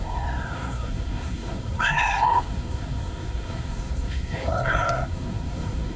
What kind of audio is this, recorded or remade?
remade